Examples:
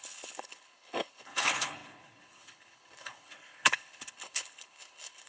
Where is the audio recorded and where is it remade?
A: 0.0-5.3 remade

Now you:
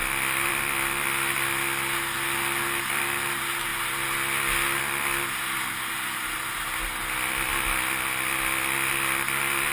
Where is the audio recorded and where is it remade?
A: 0.0-9.7 recorded